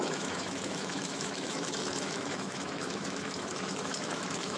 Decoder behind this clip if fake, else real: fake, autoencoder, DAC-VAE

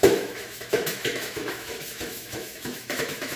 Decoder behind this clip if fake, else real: fake, autoencoder, DAC-VAE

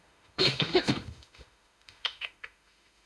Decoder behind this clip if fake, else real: fake, autoencoder, DAC-VAE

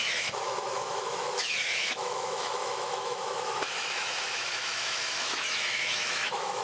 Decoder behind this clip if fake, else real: fake, autoencoder, DAC-VAE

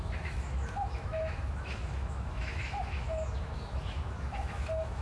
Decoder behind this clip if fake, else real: fake, autoencoder, DAC-VAE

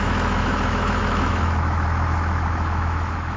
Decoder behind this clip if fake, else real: fake, autoencoder, DAC-VAE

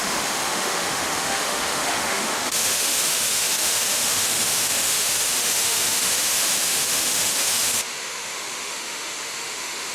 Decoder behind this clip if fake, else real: fake, autoencoder, DAC-VAE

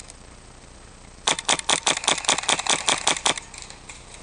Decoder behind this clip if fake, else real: real